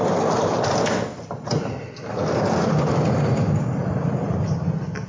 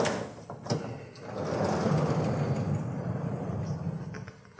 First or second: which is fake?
first